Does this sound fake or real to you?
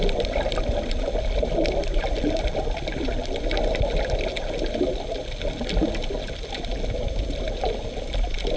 real